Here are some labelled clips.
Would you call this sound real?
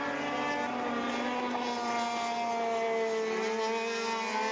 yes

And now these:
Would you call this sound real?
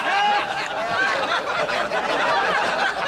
no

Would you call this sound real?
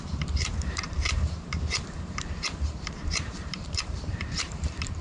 no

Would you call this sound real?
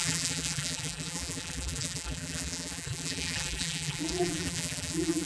no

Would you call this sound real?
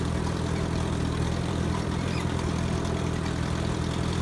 no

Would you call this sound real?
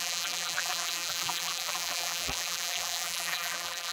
no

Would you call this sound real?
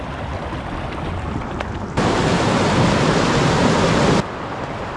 yes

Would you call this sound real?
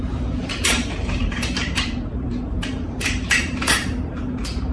no